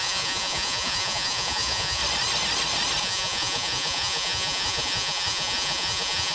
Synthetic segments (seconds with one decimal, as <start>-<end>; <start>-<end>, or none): 0.0-2.0; 3.0-6.3